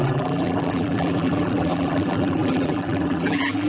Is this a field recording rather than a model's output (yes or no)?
no